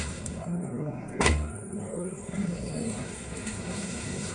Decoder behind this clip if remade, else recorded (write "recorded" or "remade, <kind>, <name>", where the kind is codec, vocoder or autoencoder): remade, codec, SNAC